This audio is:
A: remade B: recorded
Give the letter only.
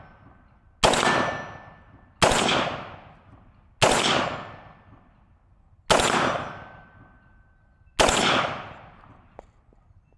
B